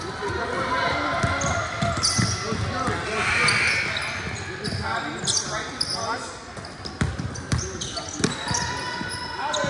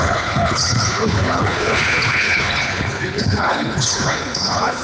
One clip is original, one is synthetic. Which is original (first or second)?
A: first